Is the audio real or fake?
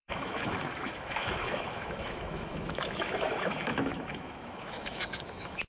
fake